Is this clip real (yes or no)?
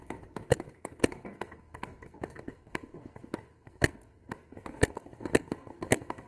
no